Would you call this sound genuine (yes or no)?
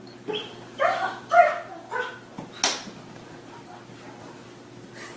yes